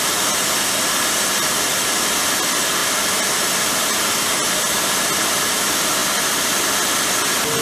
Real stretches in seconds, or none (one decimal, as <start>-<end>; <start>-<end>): 0.0-7.6